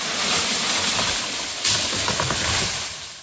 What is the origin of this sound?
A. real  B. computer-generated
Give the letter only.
A